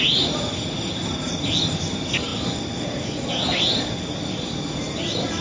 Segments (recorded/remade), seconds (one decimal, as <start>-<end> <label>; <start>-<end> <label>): 0.0-5.4 recorded